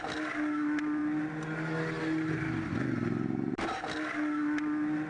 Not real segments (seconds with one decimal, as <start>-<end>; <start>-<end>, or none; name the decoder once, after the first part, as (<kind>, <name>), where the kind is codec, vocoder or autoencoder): none